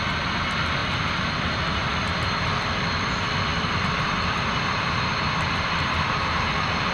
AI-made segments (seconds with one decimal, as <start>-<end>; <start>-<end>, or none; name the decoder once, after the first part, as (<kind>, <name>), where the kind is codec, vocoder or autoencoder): 3.5-6.4 (vocoder, BigVGAN v2)

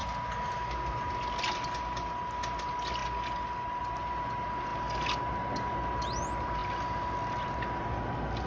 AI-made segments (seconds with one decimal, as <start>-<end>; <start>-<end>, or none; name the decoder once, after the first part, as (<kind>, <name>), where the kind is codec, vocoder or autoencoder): none

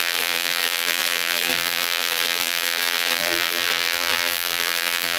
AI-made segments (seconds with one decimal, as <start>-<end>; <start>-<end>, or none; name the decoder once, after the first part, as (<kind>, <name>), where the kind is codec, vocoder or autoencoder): 0.0-5.2 (vocoder, BigVGAN v2)

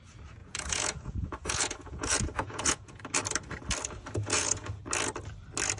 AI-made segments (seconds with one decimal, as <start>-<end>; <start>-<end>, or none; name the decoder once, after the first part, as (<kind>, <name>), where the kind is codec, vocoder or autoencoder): 0.4-3.0 (vocoder, Vocos); 4.3-4.8

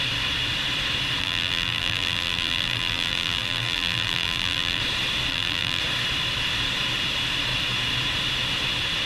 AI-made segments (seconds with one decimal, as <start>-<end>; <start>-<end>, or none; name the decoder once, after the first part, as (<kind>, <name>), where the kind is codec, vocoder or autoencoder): 1.2-4.8 (vocoder, BigVGAN v2); 5.3-5.8

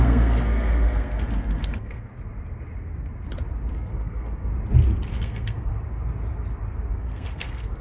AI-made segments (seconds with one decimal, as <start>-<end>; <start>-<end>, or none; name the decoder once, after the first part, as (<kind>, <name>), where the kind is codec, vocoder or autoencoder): 0.0-2.1 (codec, SNAC); 3.7-4.5; 5.1-5.7; 6.9-7.8